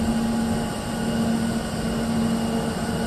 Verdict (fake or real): real